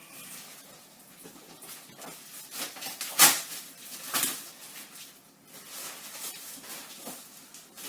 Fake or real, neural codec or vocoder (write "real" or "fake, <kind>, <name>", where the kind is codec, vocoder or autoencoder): real